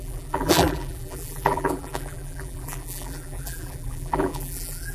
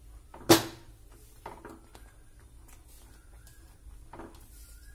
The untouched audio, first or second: second